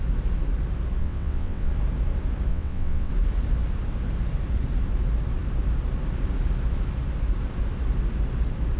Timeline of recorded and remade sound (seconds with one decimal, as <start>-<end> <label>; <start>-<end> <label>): 0.0-1.0 recorded; 1.0-1.7 remade; 1.7-2.5 recorded; 2.5-3.1 remade; 3.1-8.8 recorded